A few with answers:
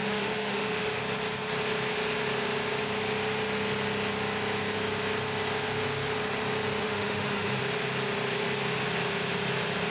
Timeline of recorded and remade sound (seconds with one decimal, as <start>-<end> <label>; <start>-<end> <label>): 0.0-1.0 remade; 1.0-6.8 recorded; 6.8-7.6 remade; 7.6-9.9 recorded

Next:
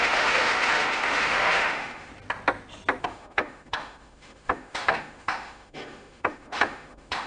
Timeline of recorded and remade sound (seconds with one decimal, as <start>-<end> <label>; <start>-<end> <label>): 0.0-2.1 remade; 2.1-3.0 recorded; 3.0-7.3 remade

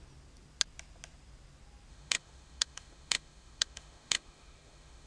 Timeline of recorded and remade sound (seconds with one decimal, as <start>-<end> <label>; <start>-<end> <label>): 0.0-1.9 recorded; 1.9-5.1 remade

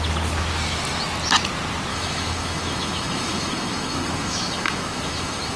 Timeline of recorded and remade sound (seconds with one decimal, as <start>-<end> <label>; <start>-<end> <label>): 0.0-1.9 recorded; 1.9-5.6 remade

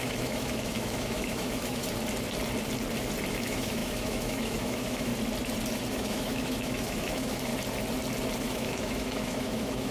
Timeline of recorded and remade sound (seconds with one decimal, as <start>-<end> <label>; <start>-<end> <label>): 0.0-1.8 remade; 1.8-3.3 recorded; 3.3-5.1 remade; 5.1-5.9 recorded; 5.9-7.5 remade; 7.5-8.4 recorded; 8.4-9.9 remade